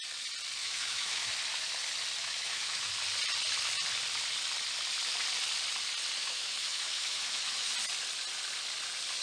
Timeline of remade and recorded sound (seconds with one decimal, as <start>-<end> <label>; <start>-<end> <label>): 0.0-0.6 recorded; 0.6-1.3 remade; 1.3-2.2 recorded; 2.2-2.9 remade; 2.9-6.2 recorded; 6.2-7.7 remade; 7.7-9.2 recorded